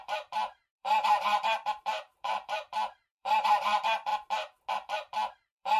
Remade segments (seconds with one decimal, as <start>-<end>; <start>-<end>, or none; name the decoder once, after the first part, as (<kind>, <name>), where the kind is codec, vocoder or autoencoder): 0.0-4.1 (vocoder, BigVGAN v2); 4.7-5.8